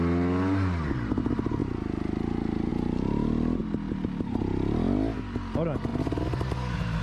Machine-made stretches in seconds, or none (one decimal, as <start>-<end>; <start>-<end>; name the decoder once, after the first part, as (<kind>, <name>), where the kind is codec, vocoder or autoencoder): none